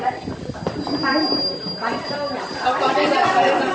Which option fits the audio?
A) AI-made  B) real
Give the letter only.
B